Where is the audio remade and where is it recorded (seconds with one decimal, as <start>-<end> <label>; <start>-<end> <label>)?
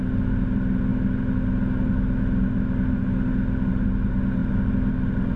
0.0-5.4 recorded